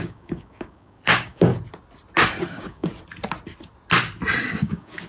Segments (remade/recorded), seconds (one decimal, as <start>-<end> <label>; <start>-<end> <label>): 0.0-1.5 remade; 1.5-2.4 recorded; 2.4-2.9 remade; 2.9-4.4 recorded; 4.4-5.1 remade